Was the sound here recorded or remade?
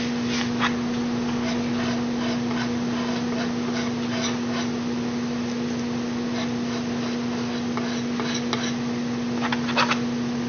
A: recorded